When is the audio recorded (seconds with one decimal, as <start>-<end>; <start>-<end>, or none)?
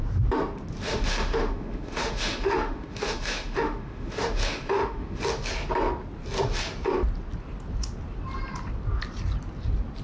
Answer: 0.0-0.8; 5.2-10.0